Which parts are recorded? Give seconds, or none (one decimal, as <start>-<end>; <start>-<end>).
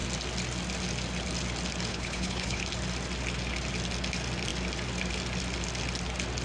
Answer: 0.0-1.9; 2.6-6.4